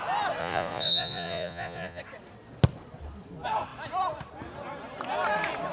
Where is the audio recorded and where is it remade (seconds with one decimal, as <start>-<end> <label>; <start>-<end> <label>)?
0.0-0.4 recorded; 0.4-2.0 remade; 2.0-5.7 recorded

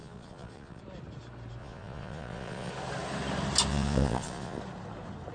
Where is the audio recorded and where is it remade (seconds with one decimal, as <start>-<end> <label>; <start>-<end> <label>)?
0.0-0.8 remade; 0.8-1.6 recorded; 1.6-2.7 remade; 2.7-3.7 recorded; 3.7-4.6 remade; 4.6-5.3 recorded

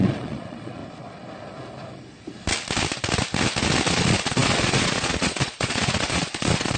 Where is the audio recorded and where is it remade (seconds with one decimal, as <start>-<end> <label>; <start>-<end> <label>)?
0.0-0.8 remade; 0.8-3.9 recorded; 3.9-6.8 remade